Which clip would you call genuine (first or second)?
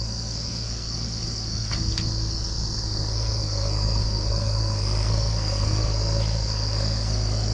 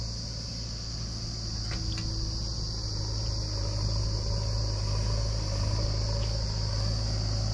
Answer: second